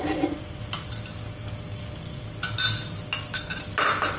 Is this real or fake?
real